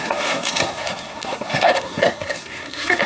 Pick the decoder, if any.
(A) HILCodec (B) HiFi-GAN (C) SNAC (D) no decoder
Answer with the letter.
C